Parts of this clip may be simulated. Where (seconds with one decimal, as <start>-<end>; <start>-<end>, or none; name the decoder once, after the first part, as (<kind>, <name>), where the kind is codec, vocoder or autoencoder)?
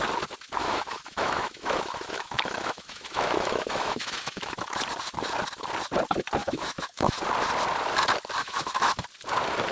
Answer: 0.6-4.8 (autoencoder, DAC-VAE); 6.4-7.2; 8.4-9.0